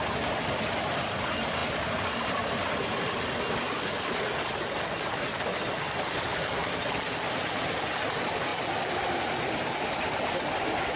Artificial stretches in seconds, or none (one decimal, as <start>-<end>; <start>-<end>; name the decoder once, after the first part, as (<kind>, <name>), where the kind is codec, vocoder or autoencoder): none